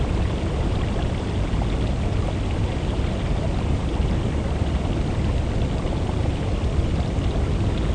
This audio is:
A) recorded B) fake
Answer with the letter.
A